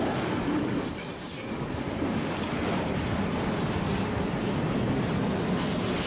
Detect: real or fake real